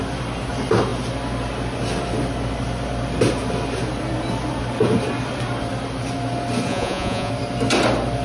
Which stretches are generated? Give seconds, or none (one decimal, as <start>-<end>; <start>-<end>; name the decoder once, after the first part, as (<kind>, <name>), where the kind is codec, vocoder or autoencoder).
6.7-7.3 (vocoder, Vocos)